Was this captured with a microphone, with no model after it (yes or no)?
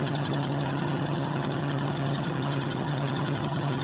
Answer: no